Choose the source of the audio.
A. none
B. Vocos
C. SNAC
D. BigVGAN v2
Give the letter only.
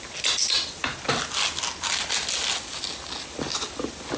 A